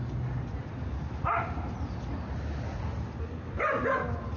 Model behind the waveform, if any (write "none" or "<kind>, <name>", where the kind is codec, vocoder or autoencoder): none